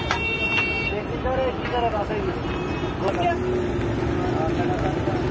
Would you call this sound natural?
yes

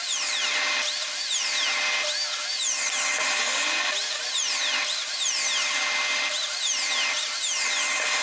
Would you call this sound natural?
yes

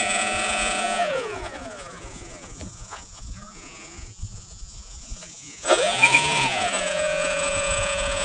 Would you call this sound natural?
no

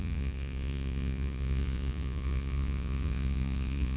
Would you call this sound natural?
no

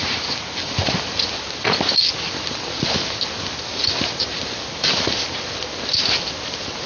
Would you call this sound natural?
yes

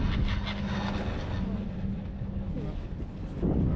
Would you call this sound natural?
yes